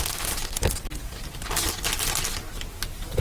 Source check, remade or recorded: recorded